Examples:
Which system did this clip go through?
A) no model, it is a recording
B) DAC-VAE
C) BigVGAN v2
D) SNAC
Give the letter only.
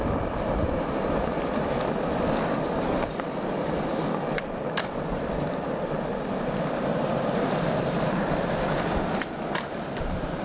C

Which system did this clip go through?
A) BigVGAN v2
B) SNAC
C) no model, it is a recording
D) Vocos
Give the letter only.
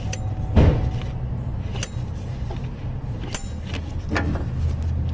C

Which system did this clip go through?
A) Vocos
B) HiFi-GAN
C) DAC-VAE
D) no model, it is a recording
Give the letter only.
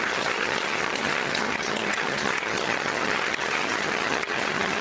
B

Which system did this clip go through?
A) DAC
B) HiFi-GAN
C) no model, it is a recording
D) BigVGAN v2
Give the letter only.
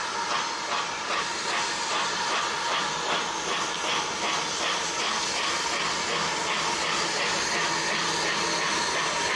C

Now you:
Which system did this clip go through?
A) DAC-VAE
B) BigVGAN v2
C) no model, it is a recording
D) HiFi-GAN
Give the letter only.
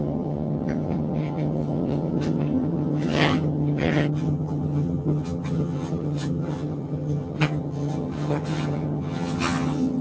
D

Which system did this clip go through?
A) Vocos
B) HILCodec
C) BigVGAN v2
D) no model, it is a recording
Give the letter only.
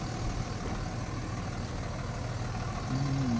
D